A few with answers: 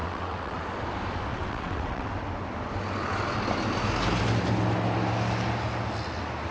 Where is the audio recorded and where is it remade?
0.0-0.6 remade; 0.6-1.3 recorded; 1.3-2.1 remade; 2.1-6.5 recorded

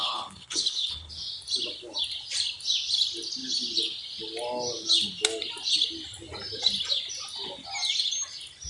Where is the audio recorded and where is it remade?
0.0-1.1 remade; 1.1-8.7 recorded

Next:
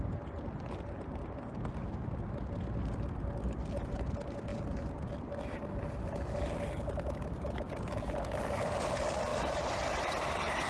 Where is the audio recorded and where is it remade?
0.0-10.7 recorded